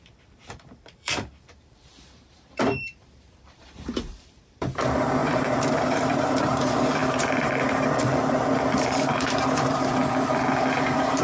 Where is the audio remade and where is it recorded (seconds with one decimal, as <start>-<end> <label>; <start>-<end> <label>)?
0.0-10.0 remade; 10.0-10.5 recorded; 10.5-11.2 remade